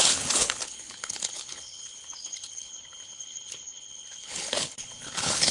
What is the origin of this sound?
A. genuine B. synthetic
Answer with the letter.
B